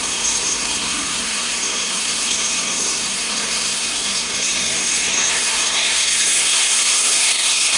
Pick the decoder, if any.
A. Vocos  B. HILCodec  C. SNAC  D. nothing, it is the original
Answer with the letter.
C